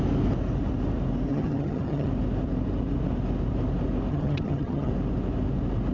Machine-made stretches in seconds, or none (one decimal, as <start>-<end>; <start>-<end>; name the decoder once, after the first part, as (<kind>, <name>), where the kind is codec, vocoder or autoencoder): 1.3-2.1 (vocoder, HiFi-GAN); 4.1-4.9